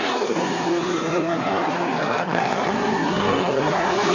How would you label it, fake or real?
fake